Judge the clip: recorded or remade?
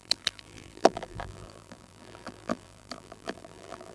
remade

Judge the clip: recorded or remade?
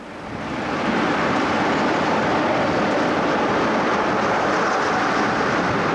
remade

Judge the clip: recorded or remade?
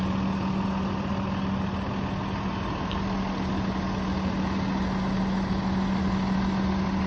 recorded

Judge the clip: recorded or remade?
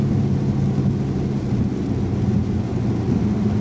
recorded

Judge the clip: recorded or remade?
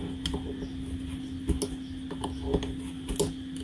recorded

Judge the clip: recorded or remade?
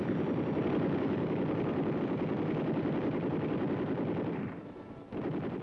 remade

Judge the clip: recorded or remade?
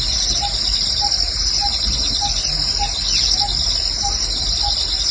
recorded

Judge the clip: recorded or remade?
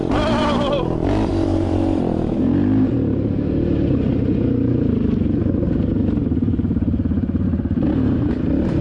remade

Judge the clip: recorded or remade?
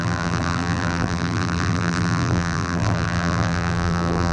remade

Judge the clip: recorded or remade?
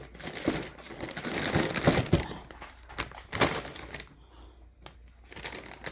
recorded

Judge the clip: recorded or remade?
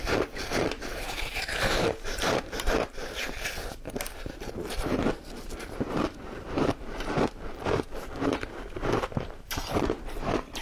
remade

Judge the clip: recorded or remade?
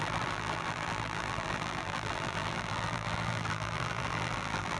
remade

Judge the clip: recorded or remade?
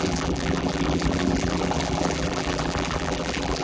remade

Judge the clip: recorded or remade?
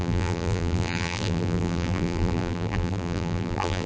remade